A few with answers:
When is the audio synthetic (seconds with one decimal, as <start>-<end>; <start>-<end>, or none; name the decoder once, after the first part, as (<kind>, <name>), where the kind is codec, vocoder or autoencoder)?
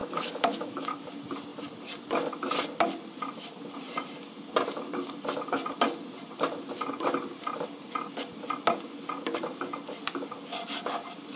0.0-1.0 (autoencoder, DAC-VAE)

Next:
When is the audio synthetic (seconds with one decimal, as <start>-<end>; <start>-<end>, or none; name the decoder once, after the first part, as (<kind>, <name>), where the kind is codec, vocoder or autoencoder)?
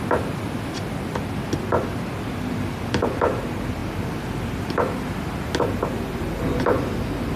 none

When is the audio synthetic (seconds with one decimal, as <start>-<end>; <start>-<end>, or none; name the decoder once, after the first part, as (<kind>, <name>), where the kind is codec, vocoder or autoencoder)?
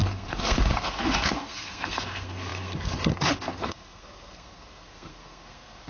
0.0-5.9 (codec, SNAC)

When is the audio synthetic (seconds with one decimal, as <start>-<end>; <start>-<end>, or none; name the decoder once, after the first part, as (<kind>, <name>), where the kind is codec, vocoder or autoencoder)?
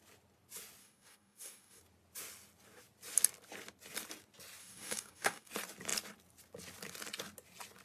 0.8-1.8 (codec, DAC); 4.6-5.5